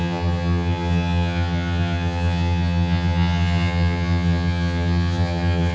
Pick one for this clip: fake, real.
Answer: fake